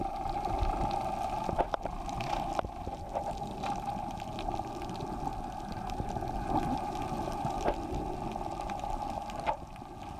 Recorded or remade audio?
recorded